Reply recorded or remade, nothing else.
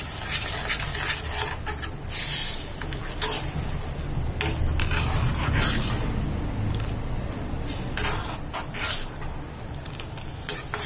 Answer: recorded